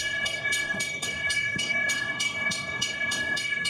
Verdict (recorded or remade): remade